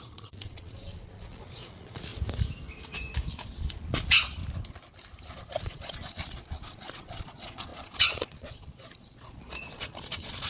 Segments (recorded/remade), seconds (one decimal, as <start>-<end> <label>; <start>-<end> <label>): 0.0-2.1 remade; 2.1-3.3 recorded; 3.3-4.4 remade; 4.4-5.3 recorded; 5.3-10.5 remade

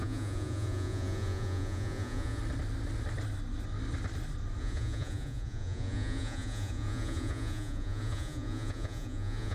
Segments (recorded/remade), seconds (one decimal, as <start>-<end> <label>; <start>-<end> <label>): 0.0-2.4 remade; 2.4-4.6 recorded; 4.6-9.5 remade